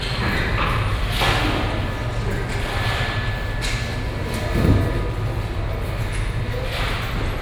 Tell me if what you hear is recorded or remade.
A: recorded